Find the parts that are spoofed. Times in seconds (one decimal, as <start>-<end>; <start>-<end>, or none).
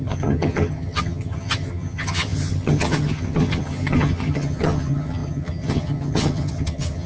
0.0-7.1